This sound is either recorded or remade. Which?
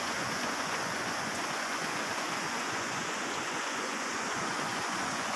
remade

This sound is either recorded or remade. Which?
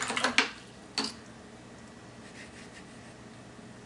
recorded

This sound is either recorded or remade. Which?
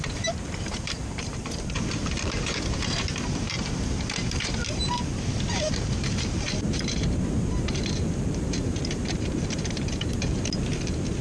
remade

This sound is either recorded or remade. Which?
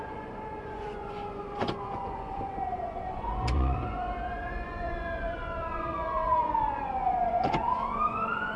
remade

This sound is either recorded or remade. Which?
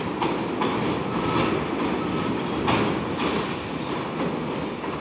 recorded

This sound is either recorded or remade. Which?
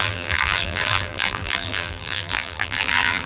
remade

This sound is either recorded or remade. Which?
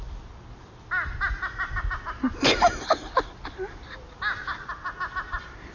recorded